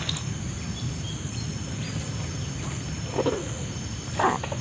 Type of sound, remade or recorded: recorded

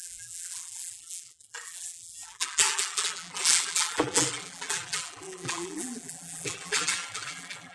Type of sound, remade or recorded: remade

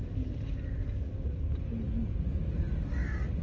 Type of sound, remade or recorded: recorded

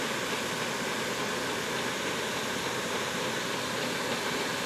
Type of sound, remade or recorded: recorded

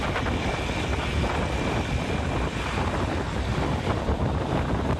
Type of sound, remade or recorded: recorded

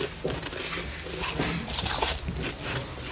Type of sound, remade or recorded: recorded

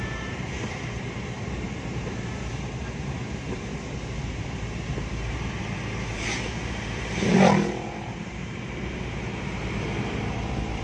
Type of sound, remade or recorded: remade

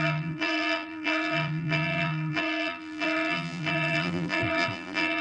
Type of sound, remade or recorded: remade